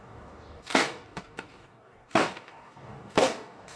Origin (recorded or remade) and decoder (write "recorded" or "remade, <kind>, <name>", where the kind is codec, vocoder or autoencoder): remade, codec, DAC